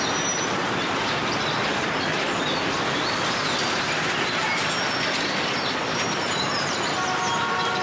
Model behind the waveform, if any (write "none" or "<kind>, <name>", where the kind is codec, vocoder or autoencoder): none